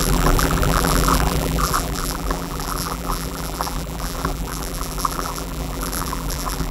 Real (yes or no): no